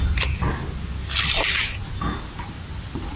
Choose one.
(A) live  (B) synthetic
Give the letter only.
A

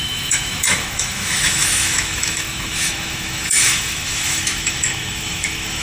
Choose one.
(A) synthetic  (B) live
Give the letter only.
A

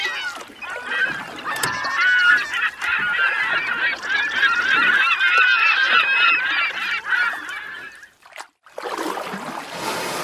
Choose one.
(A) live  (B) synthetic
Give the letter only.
A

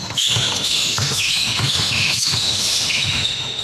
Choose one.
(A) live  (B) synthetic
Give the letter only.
B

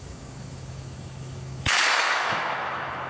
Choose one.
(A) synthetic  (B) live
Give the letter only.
A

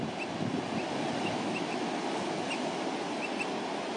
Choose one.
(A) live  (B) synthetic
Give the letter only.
A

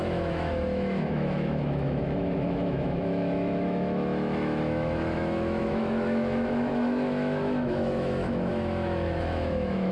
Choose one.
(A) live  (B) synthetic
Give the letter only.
B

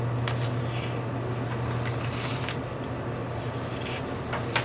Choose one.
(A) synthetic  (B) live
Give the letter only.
B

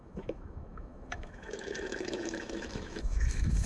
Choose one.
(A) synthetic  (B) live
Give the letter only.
A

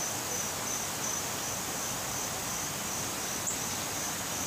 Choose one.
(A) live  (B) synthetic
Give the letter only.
A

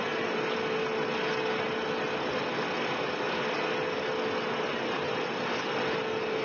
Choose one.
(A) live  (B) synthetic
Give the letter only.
A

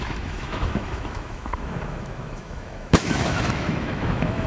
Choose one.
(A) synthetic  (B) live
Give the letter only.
A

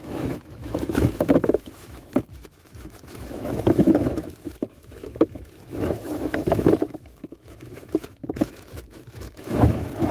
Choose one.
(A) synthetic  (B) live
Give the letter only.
A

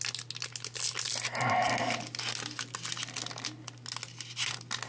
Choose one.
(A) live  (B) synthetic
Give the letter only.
A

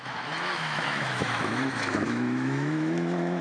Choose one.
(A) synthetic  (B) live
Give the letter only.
A